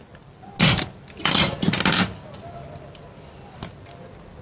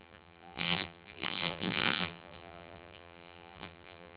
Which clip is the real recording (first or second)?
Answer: first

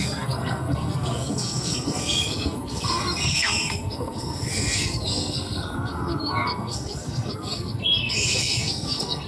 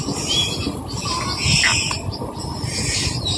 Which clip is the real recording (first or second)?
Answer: second